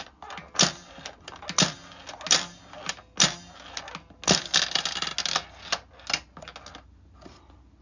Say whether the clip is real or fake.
real